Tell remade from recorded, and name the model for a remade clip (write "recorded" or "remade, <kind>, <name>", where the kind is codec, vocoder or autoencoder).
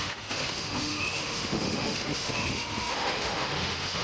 remade, autoencoder, DAC-VAE